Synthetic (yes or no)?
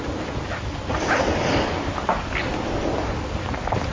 no